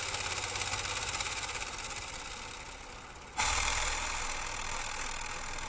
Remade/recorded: recorded